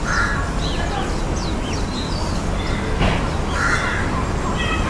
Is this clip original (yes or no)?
yes